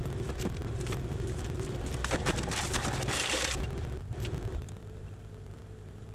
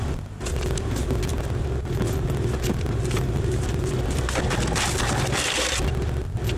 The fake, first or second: first